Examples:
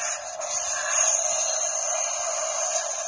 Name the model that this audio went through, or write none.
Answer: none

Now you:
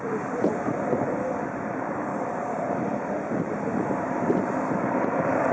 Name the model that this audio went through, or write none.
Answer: vocoder, BigVGAN v2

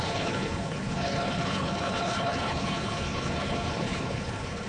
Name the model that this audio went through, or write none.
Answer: codec, HILCodec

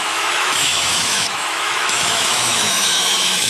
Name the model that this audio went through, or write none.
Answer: autoencoder, DAC-VAE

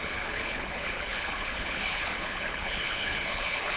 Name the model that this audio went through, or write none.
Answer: codec, HILCodec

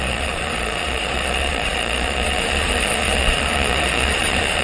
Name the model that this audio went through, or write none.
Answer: vocoder, Vocos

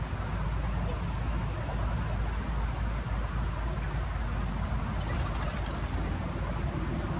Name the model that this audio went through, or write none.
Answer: none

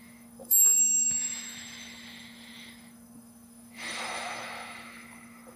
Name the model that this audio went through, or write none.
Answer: autoencoder, DAC-VAE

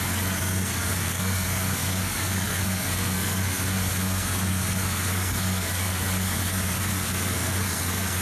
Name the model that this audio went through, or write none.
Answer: codec, SNAC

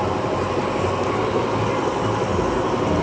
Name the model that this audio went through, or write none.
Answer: none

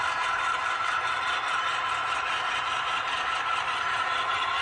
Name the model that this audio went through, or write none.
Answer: vocoder, BigVGAN v2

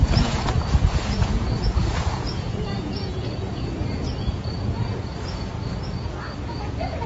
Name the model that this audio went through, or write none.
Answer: vocoder, Vocos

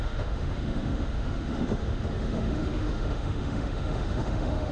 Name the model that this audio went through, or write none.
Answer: autoencoder, DAC-VAE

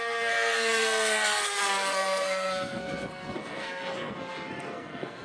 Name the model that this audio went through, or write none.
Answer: codec, SNAC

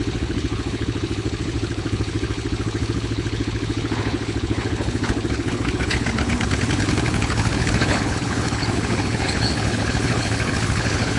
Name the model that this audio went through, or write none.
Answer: codec, HILCodec